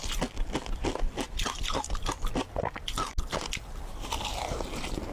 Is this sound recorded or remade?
recorded